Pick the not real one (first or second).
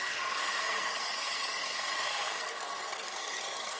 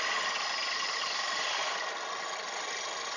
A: first